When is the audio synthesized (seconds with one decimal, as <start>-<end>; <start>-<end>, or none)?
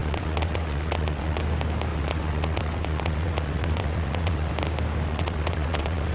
0.0-1.4; 1.9-4.5; 5.1-6.1